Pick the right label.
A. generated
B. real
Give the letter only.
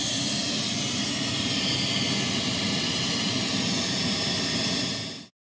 B